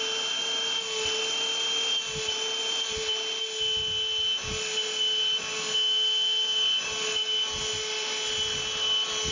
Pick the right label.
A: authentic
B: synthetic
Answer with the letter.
A